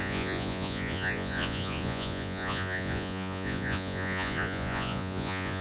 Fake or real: fake